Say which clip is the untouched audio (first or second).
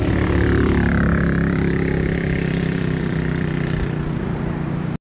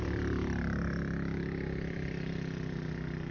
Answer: second